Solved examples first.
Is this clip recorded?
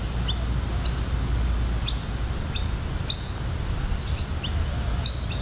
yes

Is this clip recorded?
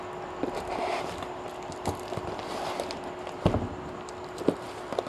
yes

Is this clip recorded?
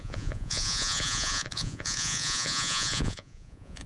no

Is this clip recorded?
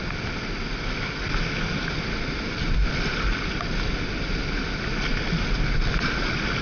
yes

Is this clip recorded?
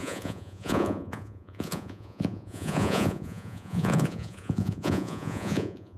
no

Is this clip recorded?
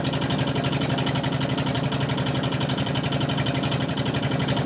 yes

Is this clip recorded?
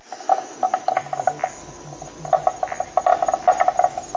yes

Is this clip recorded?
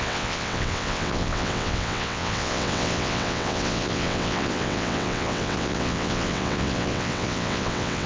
no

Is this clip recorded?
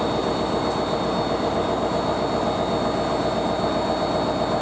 yes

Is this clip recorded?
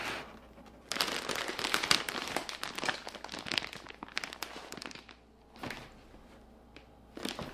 yes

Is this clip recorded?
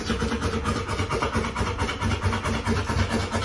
yes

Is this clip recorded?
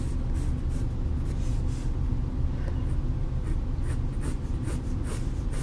yes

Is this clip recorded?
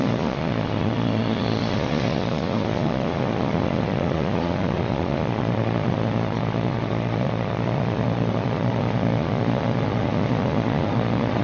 no